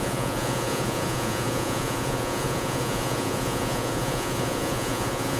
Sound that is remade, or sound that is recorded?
remade